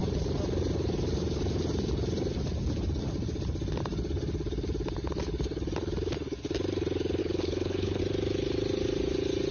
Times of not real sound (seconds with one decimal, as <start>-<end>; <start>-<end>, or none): 7.2-8.0